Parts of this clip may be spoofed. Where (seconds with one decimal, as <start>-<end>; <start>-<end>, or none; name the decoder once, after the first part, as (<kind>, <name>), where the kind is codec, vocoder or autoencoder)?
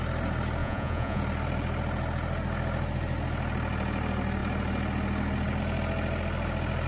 0.6-1.2 (vocoder, Vocos)